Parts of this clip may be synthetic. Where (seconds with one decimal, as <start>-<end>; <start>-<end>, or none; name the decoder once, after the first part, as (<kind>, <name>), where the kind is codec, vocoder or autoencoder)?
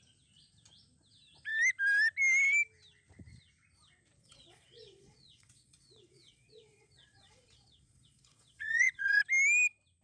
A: 4.2-9.2 (vocoder, Vocos)